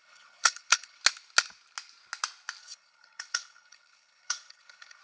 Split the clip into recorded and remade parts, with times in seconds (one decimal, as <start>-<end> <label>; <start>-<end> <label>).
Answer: 0.0-1.0 remade; 1.0-2.6 recorded; 2.6-5.0 remade